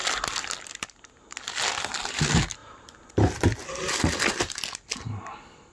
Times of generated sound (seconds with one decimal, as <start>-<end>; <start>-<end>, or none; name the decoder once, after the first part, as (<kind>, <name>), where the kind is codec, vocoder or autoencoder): none